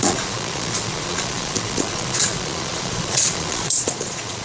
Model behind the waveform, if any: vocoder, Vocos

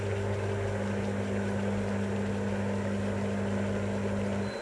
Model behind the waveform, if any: none